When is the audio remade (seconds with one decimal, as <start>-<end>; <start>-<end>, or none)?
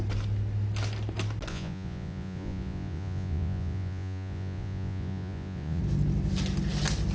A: 1.5-5.8